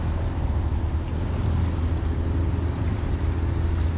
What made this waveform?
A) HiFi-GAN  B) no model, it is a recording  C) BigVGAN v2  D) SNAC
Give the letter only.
B